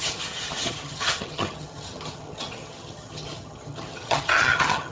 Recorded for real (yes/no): no